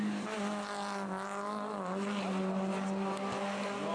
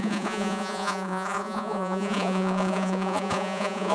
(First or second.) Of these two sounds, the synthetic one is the second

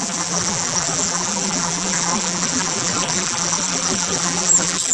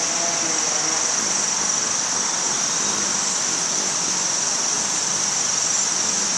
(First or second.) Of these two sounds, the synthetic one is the first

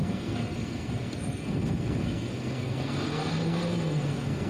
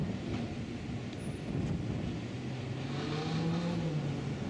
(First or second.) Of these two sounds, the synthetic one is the first